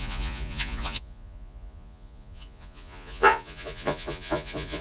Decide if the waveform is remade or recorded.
remade